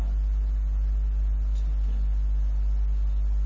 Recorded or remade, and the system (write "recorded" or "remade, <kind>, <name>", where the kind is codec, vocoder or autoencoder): recorded